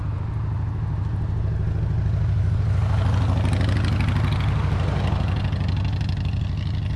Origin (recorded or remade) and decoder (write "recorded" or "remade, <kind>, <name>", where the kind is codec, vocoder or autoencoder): recorded